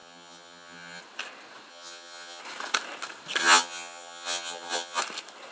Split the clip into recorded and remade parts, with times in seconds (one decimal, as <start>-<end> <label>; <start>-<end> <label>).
0.0-1.0 remade; 1.0-1.7 recorded; 1.7-2.4 remade; 2.4-3.4 recorded; 3.4-5.0 remade; 5.0-5.5 recorded